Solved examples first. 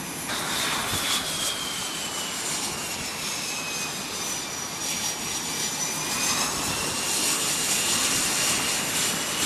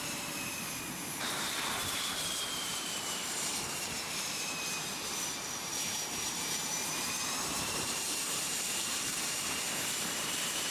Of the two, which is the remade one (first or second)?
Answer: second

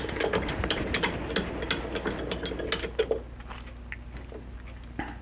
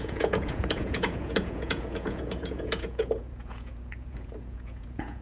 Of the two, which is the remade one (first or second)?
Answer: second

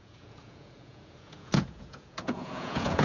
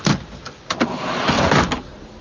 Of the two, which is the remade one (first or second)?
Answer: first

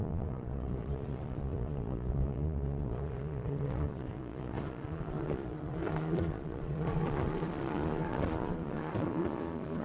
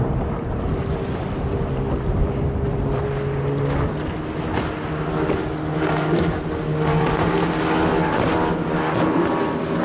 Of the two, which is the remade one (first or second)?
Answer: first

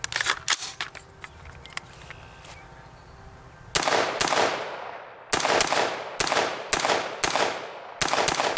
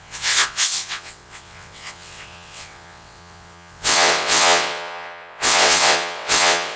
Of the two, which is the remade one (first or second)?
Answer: second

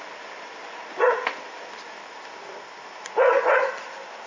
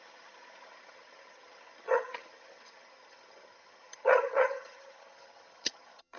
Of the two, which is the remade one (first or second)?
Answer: second